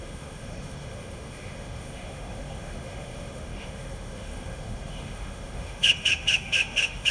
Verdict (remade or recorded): remade